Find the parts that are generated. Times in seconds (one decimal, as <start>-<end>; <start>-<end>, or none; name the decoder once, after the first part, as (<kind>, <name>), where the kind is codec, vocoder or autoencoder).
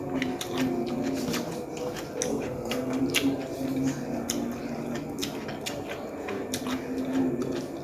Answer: 2.3-3.0 (codec, SNAC)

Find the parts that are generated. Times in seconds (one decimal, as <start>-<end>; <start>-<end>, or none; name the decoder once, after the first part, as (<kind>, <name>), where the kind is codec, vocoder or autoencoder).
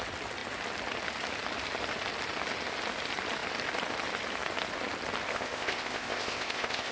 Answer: 5.3-6.9 (codec, ZipCodec)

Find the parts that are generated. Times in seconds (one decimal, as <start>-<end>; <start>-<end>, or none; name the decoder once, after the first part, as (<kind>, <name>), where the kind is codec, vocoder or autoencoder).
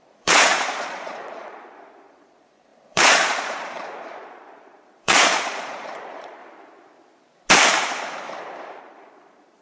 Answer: 0.0-6.4 (vocoder, Vocos); 8.8-9.6